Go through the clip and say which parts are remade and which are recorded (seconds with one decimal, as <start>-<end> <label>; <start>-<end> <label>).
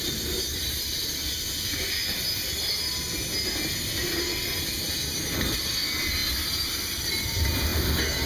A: 0.0-2.0 remade; 2.0-4.5 recorded; 4.5-8.3 remade